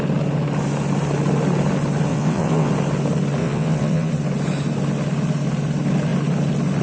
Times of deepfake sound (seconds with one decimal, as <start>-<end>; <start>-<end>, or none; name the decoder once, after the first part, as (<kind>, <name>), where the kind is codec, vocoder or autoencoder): 2.1-2.7 (vocoder, WaveNeXt); 3.4-4.1